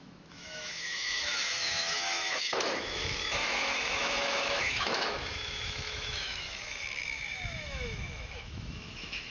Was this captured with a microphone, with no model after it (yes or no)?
no